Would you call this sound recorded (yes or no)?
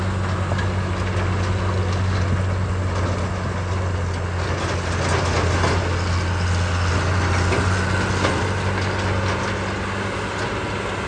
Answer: yes